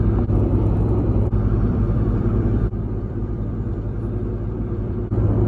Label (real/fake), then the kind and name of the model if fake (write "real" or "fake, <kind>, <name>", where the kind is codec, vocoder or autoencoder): fake, vocoder, BigVGAN v2